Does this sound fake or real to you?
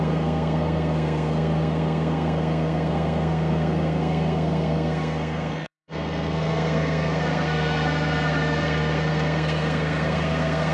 fake